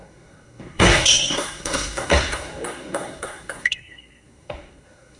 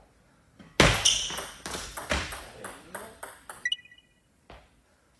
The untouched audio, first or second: second